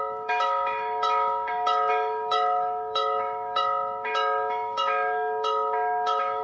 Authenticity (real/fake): fake